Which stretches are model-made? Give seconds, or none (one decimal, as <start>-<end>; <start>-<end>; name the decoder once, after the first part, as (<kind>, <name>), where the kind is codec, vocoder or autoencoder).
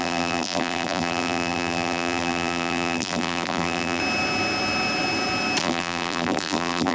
0.0-4.0 (vocoder, BigVGAN v2); 5.6-6.9